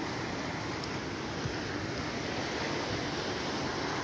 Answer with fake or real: real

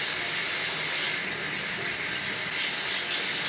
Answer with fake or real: real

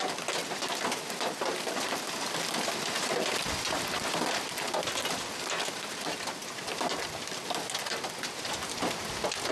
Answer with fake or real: real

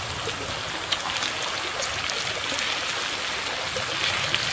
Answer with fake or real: real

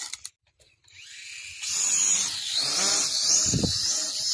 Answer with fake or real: real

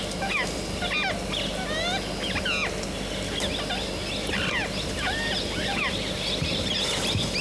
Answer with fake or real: real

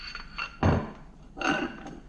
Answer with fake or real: real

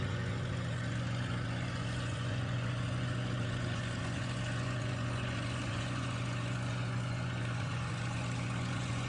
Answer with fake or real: fake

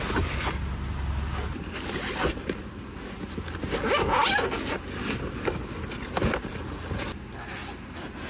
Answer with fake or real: real